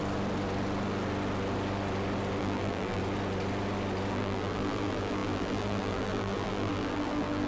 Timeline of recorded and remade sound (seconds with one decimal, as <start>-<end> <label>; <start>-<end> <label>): 0.0-2.4 recorded; 2.4-3.0 remade; 3.0-4.1 recorded; 4.1-7.5 remade